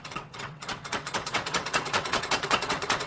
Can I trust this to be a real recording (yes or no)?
no